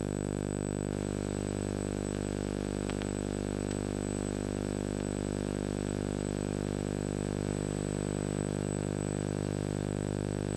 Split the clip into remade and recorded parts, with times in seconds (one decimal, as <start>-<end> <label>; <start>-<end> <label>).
0.0-7.5 remade; 7.5-8.4 recorded; 8.4-10.6 remade